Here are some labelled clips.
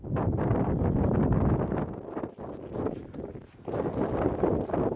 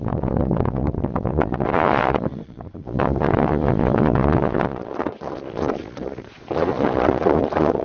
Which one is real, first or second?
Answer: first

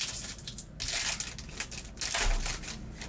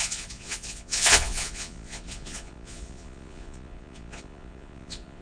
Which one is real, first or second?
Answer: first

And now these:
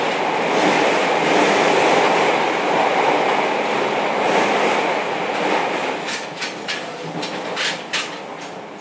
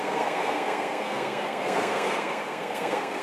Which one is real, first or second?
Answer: first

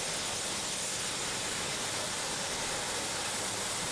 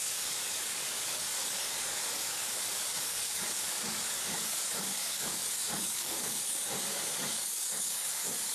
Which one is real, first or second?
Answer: first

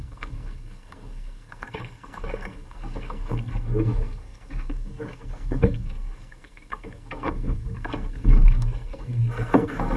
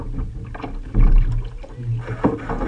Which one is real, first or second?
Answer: second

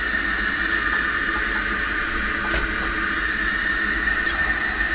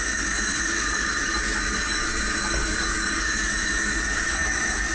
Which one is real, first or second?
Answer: first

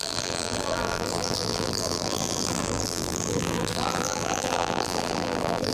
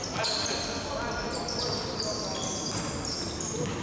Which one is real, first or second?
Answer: second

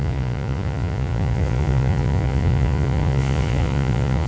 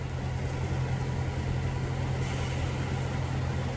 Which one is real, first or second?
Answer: second